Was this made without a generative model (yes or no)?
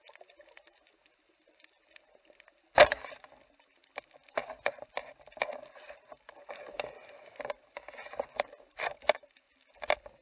yes